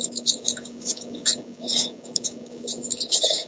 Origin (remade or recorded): remade